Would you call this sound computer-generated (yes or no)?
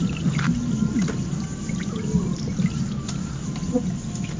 no